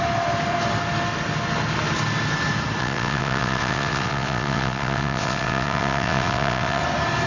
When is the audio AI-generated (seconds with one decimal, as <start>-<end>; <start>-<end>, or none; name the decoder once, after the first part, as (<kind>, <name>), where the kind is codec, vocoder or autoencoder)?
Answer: 2.8-6.8 (vocoder, WaveNeXt)